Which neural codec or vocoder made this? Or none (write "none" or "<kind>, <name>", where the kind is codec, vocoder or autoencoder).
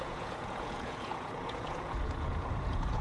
vocoder, Vocos